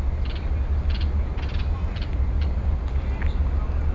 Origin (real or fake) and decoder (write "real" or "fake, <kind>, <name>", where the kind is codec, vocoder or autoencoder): real